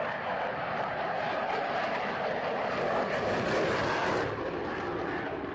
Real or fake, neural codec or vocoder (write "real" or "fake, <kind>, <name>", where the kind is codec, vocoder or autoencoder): real